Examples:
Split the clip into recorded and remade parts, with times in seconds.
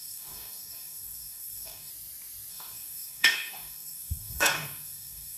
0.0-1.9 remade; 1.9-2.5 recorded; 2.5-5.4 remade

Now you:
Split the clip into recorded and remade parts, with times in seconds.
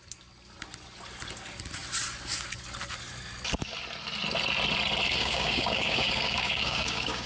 0.0-5.2 recorded; 5.2-7.3 remade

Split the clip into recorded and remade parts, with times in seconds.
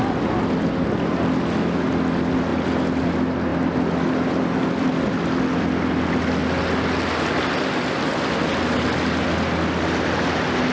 0.0-10.7 recorded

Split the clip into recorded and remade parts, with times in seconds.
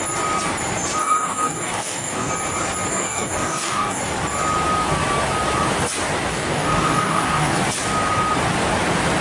0.0-1.0 recorded; 1.0-2.3 remade; 2.3-2.9 recorded; 2.9-4.0 remade; 4.0-6.3 recorded; 6.3-7.6 remade; 7.6-9.2 recorded